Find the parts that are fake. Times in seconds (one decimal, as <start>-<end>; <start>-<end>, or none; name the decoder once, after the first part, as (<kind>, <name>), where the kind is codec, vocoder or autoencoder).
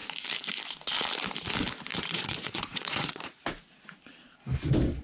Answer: 1.9-3.4 (vocoder, Vocos)